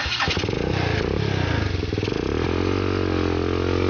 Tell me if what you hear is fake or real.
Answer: real